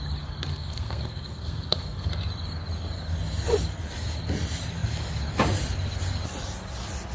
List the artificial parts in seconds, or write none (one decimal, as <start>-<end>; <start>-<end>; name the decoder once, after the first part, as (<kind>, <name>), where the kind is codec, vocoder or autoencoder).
0.5-2.1 (codec, SNAC)